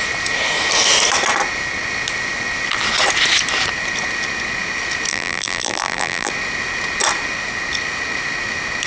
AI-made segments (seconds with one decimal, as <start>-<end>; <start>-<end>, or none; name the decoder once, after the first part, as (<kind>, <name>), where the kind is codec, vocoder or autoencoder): 5.1-6.3 (vocoder, BigVGAN v2)